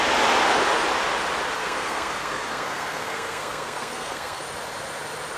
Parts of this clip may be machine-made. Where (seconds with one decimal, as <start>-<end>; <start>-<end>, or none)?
1.6-4.4